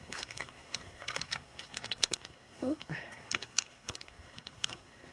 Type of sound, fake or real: fake